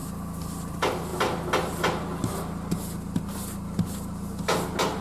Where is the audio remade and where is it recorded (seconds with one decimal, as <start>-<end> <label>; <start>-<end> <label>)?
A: 0.0-5.0 recorded